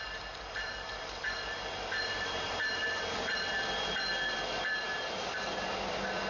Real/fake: fake